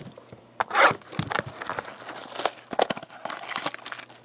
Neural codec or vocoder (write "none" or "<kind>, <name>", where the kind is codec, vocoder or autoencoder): none